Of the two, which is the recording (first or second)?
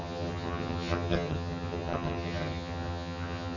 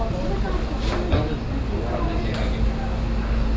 second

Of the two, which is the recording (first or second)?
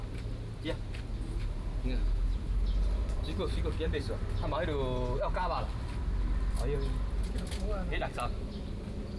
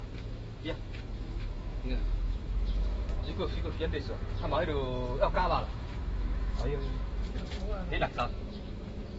first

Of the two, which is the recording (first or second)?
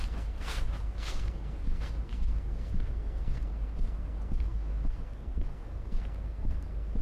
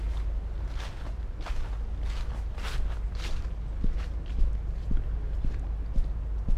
second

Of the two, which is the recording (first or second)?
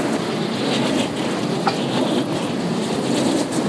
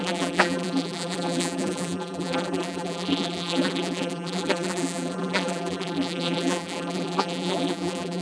first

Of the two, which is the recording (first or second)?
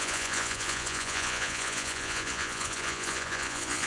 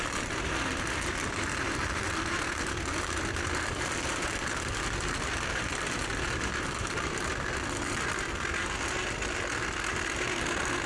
second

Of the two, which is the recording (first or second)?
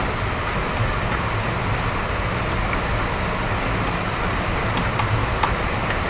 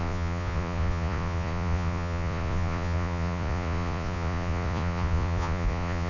first